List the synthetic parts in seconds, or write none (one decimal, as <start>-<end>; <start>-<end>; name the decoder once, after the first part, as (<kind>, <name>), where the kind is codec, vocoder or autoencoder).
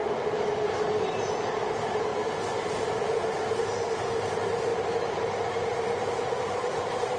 0.0-4.7 (vocoder, BigVGAN v2); 5.6-7.2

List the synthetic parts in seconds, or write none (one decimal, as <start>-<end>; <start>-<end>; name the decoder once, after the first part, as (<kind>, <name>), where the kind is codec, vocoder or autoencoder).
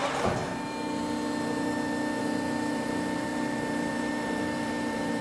0.0-0.4 (vocoder, BigVGAN v2); 2.2-5.2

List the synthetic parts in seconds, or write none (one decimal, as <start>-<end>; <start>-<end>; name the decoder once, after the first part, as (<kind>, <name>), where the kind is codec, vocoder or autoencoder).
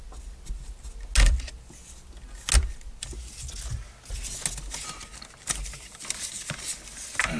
none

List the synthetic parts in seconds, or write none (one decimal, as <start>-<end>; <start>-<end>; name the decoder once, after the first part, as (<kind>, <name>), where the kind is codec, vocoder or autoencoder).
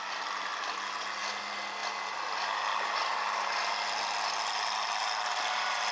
0.0-0.5 (vocoder, BigVGAN v2); 1.4-1.8; 4.4-5.9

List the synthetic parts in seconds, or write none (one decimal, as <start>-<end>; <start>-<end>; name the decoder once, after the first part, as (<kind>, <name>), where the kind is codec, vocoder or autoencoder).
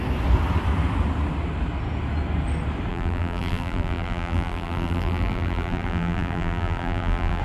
2.9-7.4 (vocoder, BigVGAN v2)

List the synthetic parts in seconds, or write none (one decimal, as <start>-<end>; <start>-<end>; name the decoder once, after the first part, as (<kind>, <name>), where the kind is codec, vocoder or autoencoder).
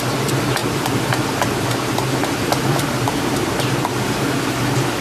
0.6-3.6 (vocoder, BigVGAN v2)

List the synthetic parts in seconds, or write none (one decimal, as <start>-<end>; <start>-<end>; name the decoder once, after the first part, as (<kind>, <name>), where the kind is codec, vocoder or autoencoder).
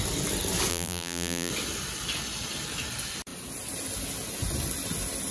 0.7-1.5 (vocoder, BigVGAN v2)